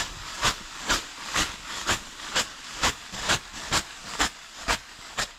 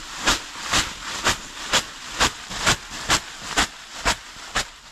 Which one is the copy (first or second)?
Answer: first